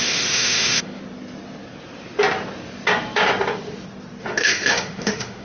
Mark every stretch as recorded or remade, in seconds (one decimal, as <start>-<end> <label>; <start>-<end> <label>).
0.0-1.0 remade; 1.0-4.2 recorded; 4.2-5.4 remade